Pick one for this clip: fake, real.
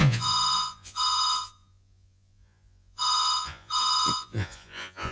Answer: fake